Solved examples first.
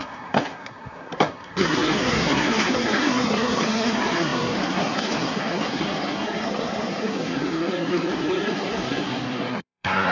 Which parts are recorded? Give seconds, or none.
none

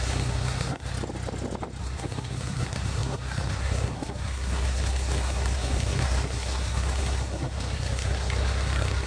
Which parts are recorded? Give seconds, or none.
0.9-1.8

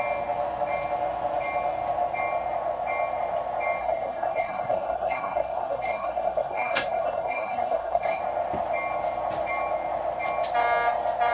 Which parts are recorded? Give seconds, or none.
0.0-3.8; 8.2-11.3